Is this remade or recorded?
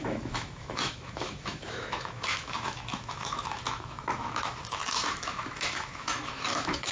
remade